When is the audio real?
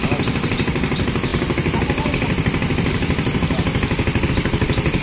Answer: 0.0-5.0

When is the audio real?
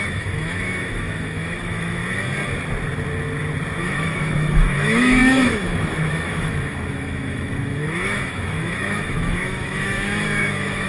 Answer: 2.0-3.8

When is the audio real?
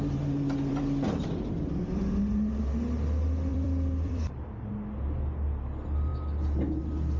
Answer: 2.6-3.5; 4.7-7.2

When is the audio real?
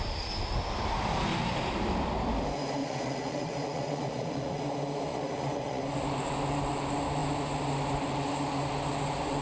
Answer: 0.0-2.8; 4.6-5.1; 5.8-9.4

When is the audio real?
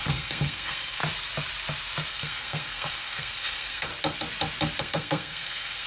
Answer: 1.0-2.1; 3.9-4.8